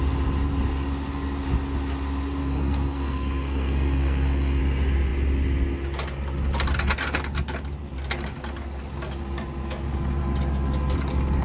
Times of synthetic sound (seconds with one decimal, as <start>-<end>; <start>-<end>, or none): 2.4-4.6

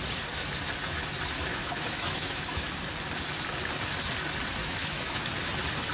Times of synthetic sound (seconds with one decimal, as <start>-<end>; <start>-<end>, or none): 1.5-2.7; 4.6-5.2